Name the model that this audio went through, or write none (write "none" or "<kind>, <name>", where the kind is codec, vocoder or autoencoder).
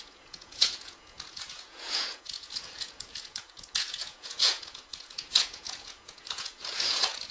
vocoder, Vocos